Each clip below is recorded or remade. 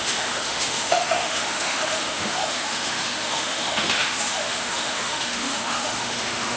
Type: remade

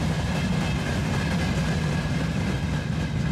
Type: recorded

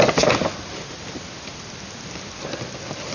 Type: recorded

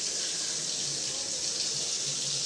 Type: recorded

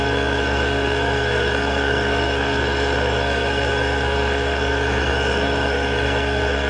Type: remade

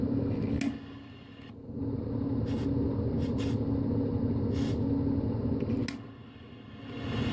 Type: recorded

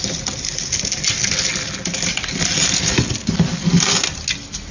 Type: recorded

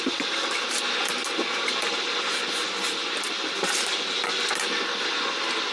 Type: recorded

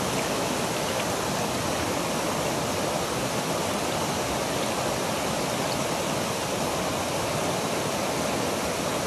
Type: recorded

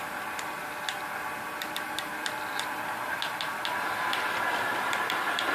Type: recorded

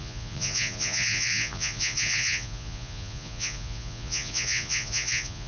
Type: remade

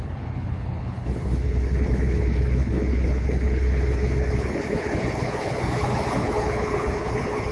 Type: remade